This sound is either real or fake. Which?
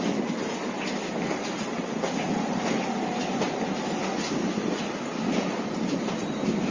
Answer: real